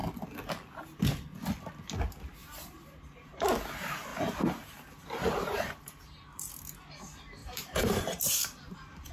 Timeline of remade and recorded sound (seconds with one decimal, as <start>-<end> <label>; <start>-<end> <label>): 0.0-2.4 recorded; 2.4-3.6 remade; 3.6-4.1 recorded; 4.1-6.5 remade; 6.5-7.4 recorded; 7.4-9.1 remade